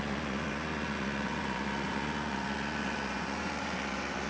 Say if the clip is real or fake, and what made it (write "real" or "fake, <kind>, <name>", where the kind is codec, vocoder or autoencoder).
fake, vocoder, Vocos